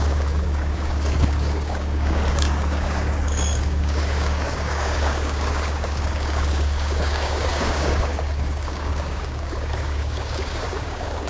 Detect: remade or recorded remade